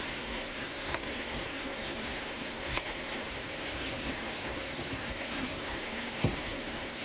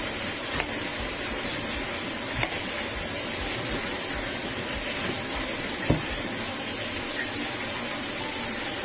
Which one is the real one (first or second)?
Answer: second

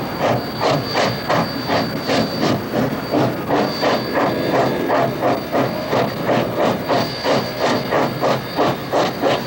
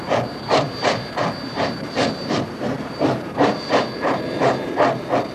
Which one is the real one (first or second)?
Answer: first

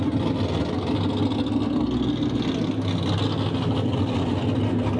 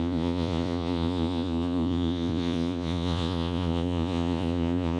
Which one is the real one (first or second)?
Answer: first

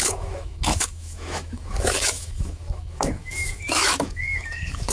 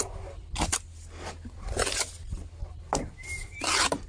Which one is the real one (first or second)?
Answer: second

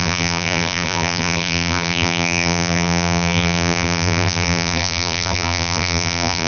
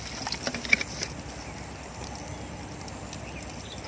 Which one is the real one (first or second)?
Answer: second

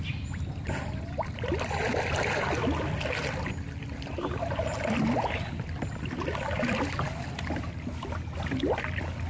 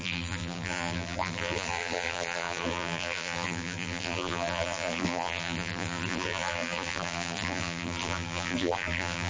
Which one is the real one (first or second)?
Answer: first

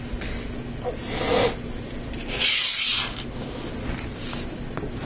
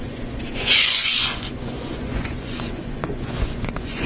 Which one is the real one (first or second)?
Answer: first